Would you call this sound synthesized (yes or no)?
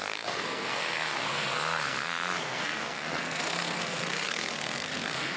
yes